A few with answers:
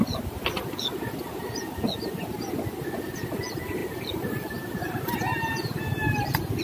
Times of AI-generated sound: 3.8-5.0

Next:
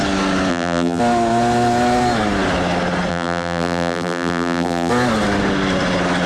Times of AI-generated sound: 0.5-1.0; 3.1-4.9

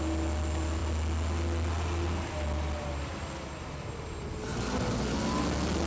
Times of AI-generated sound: none

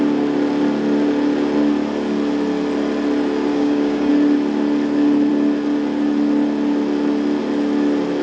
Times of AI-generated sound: 3.5-4.1

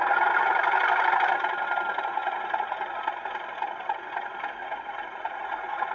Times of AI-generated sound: 2.1-3.0; 4.6-5.9